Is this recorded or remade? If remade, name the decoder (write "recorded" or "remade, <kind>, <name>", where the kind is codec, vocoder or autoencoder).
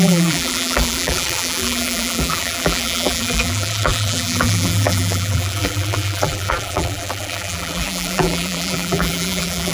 remade, vocoder, BigVGAN v2